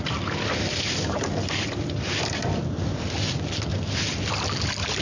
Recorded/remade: recorded